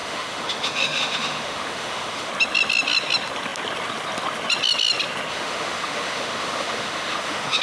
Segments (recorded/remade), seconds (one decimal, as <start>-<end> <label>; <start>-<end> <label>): 0.0-2.3 remade; 2.3-5.3 recorded; 5.3-7.6 remade